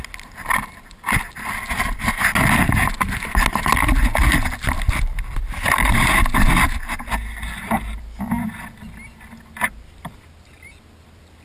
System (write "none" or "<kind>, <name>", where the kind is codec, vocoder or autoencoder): none